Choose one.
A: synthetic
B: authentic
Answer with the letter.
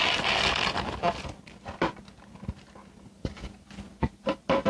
B